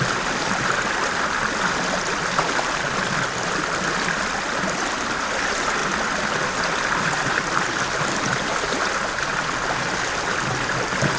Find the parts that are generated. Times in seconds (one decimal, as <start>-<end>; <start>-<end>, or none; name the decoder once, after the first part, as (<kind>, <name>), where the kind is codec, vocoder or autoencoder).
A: none